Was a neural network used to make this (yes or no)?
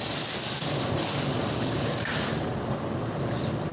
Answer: no